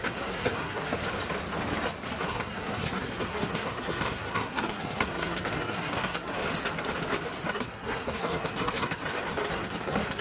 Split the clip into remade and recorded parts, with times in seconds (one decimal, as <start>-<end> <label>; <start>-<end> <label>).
0.0-1.0 remade; 1.0-2.2 recorded; 2.2-6.4 remade; 6.4-7.5 recorded; 7.5-9.0 remade; 9.0-9.5 recorded; 9.5-10.2 remade